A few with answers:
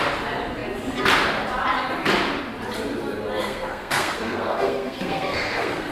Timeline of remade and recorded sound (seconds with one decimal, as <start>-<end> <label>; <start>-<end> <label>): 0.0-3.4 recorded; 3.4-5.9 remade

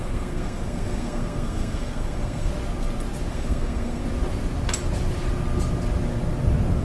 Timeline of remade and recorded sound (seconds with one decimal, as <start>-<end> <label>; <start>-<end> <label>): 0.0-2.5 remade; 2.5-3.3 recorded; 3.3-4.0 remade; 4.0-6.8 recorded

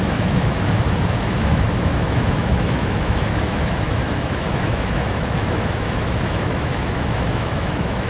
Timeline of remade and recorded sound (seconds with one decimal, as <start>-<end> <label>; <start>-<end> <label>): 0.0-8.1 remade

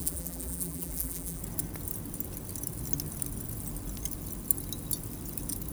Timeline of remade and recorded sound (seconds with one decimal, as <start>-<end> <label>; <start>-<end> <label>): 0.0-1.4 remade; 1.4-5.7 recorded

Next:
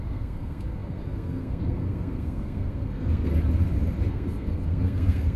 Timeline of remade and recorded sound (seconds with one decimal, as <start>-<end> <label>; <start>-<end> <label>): 0.0-3.3 remade; 3.3-4.1 recorded; 4.1-5.4 remade